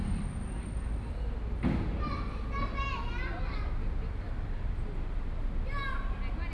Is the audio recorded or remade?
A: recorded